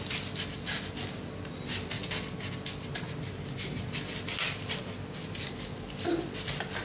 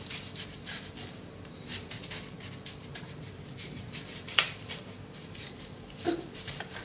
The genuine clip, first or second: first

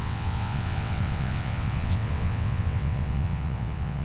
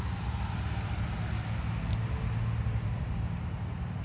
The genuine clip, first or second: second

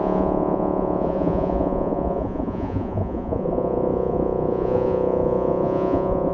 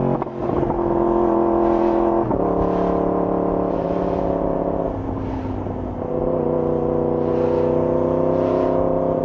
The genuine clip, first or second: second